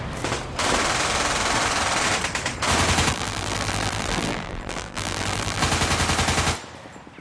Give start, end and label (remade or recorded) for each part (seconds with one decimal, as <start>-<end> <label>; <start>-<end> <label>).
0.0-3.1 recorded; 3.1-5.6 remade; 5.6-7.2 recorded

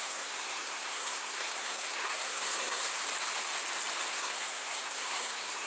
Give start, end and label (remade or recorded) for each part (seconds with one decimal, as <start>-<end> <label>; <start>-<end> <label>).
0.0-3.0 remade; 3.0-4.1 recorded; 4.1-5.7 remade

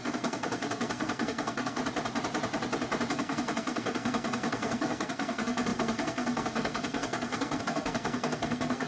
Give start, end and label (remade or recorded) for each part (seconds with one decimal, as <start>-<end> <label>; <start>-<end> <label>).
0.0-1.8 remade; 1.8-3.1 recorded; 3.1-8.9 remade

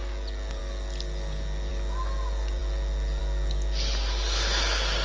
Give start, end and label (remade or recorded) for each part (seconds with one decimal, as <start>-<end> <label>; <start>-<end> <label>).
0.0-5.0 recorded

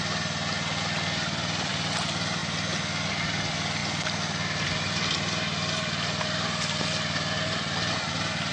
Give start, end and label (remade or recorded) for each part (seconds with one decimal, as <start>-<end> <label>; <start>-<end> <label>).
0.0-8.5 recorded

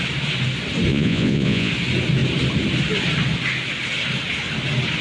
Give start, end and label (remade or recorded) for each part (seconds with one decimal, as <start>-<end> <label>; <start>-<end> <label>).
0.0-0.9 recorded; 0.9-1.7 remade; 1.7-5.0 recorded

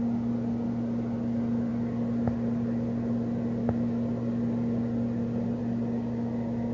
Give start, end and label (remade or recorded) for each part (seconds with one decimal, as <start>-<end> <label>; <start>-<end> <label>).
0.0-6.7 recorded

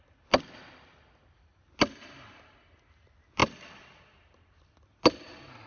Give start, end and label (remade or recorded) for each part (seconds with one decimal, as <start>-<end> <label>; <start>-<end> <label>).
0.0-5.7 recorded